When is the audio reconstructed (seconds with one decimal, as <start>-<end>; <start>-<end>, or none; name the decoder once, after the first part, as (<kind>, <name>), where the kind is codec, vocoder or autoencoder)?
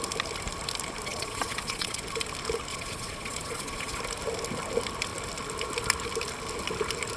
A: 1.1-2.0 (vocoder, Vocos); 2.7-4.0